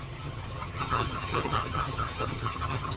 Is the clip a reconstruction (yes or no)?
yes